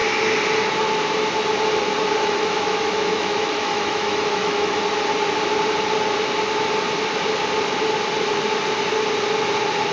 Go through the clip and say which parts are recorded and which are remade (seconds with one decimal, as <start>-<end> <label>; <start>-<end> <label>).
0.0-2.2 recorded; 2.2-4.8 remade; 4.8-9.9 recorded